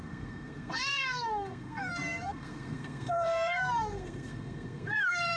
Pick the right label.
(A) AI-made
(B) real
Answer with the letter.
A